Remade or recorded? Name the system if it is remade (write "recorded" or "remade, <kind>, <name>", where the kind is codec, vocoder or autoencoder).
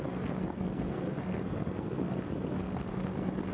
remade, codec, SNAC